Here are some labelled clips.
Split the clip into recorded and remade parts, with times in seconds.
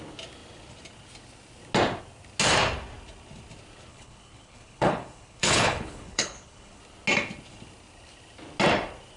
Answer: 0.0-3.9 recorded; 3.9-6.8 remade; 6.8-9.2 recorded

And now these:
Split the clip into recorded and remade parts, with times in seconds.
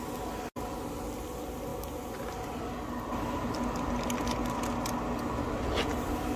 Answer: 0.0-6.4 recorded